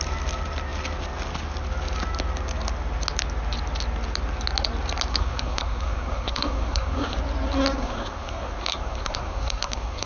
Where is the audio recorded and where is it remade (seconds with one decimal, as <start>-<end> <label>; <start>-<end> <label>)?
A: 0.0-5.1 recorded; 5.1-7.2 remade; 7.2-7.8 recorded; 7.8-10.1 remade